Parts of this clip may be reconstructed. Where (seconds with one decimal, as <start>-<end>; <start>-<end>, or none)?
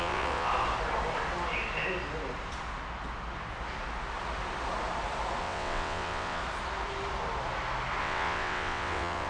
0.0-0.5; 5.4-6.4; 8.0-9.3